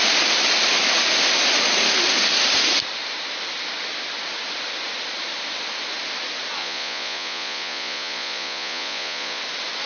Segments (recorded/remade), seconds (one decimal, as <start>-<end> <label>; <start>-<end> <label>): 0.0-6.6 recorded; 6.6-9.4 remade; 9.4-9.9 recorded